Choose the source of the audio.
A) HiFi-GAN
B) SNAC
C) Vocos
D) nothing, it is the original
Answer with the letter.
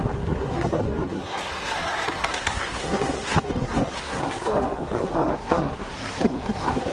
B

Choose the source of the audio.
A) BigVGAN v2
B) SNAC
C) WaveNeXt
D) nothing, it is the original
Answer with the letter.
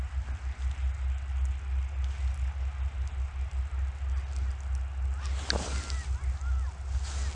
D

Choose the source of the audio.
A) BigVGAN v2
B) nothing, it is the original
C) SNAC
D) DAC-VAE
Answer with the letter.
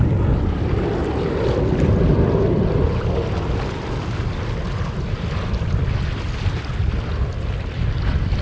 B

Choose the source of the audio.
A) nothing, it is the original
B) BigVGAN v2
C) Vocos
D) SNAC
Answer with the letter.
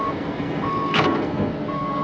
D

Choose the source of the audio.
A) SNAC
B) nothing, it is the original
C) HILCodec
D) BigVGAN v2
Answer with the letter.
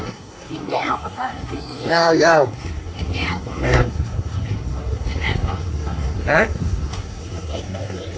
A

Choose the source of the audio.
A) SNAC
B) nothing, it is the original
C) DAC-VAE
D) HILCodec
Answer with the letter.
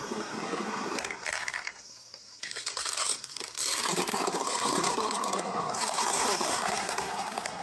A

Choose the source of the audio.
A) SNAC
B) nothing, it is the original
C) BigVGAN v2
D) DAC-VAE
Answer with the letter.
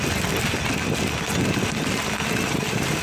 B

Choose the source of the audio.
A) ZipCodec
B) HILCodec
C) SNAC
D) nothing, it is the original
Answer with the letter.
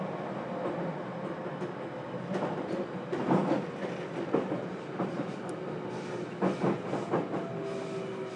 D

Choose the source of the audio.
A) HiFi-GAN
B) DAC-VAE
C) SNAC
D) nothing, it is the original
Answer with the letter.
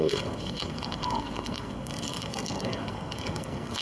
C